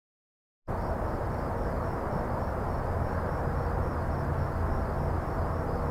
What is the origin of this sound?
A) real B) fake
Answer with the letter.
A